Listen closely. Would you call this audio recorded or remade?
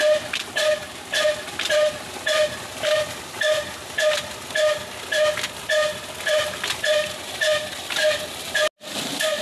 recorded